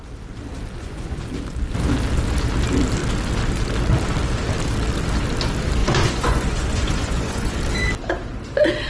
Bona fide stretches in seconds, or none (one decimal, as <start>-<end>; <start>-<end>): 0.0-0.8; 1.3-5.8; 7.6-8.9